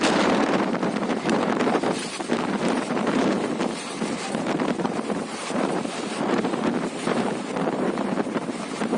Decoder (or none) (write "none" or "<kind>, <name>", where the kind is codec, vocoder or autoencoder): vocoder, BigVGAN v2